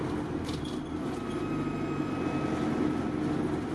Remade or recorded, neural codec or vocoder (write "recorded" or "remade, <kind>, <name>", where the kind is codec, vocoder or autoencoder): recorded